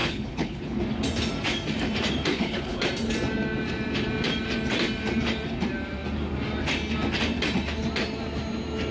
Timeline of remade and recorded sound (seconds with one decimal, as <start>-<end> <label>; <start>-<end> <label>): 0.0-0.8 remade; 0.8-2.3 recorded; 2.3-2.8 remade; 2.8-8.9 recorded